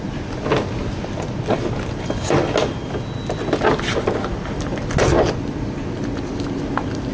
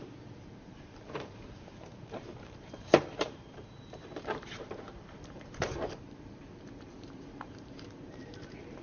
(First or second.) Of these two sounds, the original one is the first